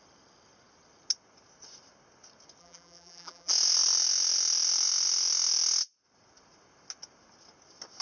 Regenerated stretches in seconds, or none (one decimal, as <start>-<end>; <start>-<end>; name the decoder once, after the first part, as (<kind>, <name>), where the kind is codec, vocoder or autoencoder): 2.6-3.5 (vocoder, BigVGAN v2)